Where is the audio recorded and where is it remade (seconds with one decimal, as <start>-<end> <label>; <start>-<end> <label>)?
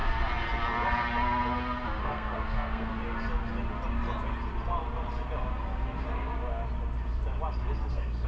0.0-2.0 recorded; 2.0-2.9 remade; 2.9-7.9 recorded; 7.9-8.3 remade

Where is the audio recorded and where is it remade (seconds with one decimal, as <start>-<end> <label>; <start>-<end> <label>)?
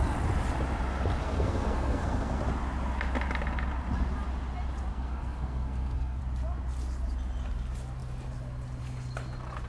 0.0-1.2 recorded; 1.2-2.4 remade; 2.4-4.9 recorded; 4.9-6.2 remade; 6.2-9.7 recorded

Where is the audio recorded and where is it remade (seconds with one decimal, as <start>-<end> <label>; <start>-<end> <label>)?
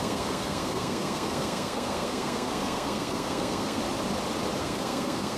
0.0-3.8 remade; 3.8-4.6 recorded; 4.6-5.4 remade